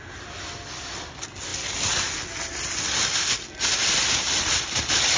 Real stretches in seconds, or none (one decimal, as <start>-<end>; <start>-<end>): 0.0-5.2